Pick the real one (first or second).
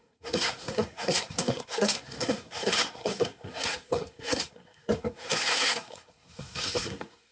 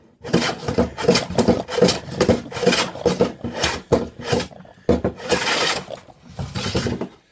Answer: second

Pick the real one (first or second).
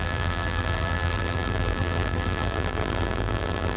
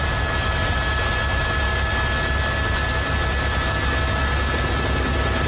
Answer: second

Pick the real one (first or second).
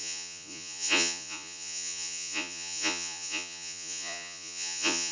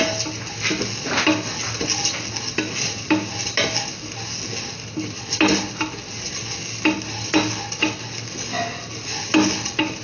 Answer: second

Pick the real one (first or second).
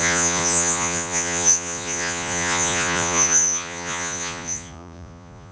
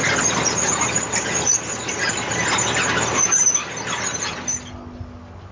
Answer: second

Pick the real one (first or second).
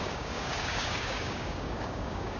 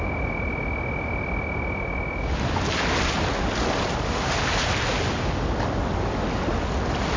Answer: second